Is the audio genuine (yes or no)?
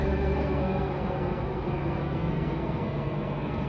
no